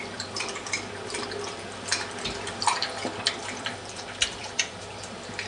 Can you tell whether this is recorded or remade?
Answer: remade